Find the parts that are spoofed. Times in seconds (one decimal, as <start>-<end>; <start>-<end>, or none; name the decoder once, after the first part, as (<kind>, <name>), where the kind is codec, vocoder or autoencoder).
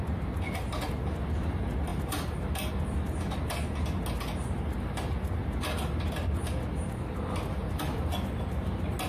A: none